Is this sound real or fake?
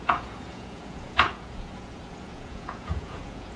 fake